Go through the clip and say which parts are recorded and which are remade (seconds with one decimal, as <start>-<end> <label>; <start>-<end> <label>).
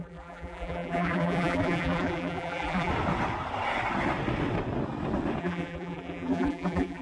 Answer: 0.0-2.9 remade; 2.9-5.4 recorded; 5.4-7.0 remade